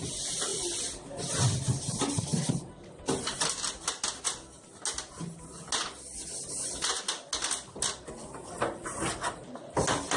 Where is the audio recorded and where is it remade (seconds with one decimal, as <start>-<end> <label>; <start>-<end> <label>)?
0.0-10.2 recorded